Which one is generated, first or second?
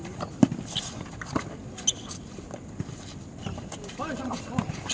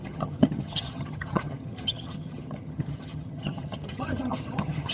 second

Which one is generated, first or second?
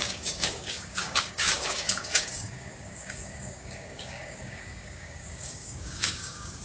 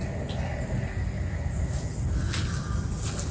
first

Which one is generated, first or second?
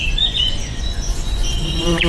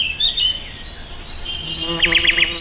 first